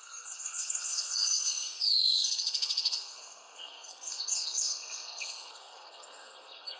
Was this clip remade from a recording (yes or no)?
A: yes